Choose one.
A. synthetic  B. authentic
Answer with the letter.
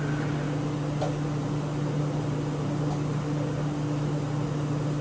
B